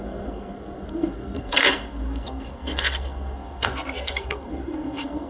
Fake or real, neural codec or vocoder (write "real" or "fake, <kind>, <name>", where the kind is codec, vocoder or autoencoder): fake, codec, SNAC